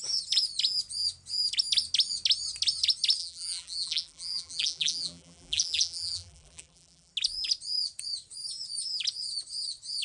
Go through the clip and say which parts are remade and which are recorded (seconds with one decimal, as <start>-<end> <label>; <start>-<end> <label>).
0.0-3.2 recorded; 3.2-7.1 remade; 7.1-10.0 recorded